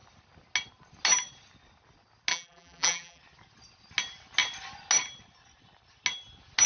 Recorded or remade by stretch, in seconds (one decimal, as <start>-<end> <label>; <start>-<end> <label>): 0.0-2.3 recorded; 2.3-3.2 remade; 3.2-6.7 recorded